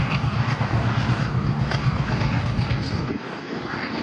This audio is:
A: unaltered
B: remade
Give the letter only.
B